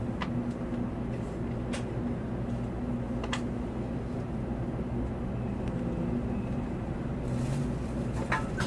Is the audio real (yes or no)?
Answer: yes